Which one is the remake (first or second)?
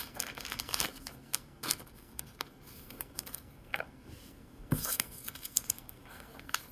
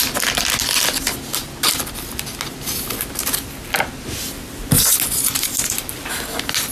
first